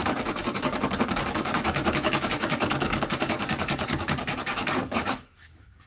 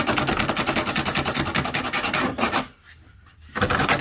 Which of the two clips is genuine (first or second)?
second